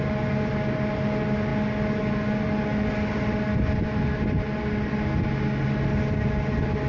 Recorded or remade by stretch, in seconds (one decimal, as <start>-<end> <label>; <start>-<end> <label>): 0.0-6.9 recorded